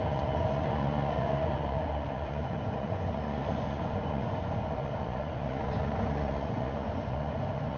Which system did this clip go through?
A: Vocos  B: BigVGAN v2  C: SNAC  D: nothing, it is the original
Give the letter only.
A